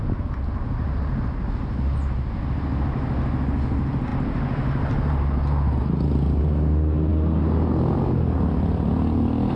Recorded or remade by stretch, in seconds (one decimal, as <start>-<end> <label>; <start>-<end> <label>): 0.0-9.6 recorded